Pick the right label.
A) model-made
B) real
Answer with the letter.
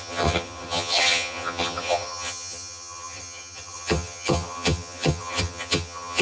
A